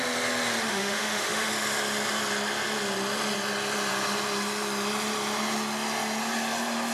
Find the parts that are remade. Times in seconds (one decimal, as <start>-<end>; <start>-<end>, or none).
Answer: 0.6-1.5